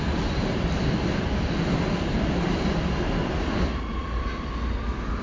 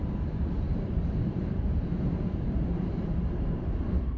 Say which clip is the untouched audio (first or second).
first